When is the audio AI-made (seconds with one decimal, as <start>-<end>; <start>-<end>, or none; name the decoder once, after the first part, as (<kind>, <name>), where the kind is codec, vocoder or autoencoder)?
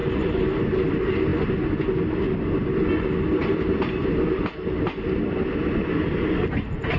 none